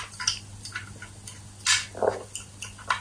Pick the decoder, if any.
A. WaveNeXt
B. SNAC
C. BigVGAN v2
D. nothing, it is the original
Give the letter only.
D